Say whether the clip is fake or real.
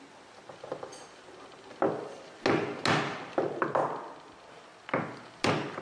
real